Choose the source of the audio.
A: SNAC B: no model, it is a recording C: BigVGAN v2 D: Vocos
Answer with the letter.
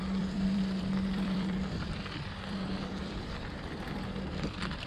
C